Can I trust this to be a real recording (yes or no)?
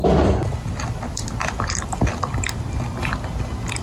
yes